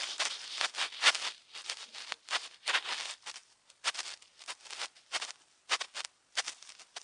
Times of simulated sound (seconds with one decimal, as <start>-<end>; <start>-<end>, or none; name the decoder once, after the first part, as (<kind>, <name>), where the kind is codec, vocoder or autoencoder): none